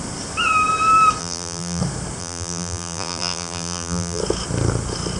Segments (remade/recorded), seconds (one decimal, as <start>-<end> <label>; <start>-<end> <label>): 0.0-1.2 recorded; 1.2-1.8 remade; 1.8-2.2 recorded; 2.2-4.2 remade; 4.2-5.2 recorded